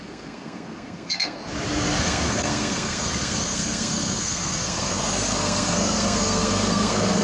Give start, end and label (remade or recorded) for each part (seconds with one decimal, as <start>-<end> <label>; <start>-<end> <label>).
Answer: 0.0-1.4 remade; 1.4-2.0 recorded; 2.0-7.2 remade

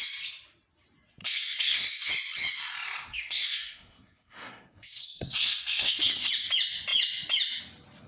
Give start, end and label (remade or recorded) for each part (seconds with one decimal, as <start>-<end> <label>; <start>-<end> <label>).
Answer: 0.0-1.2 recorded; 1.2-2.1 remade; 2.1-3.1 recorded; 3.1-6.3 remade; 6.3-8.1 recorded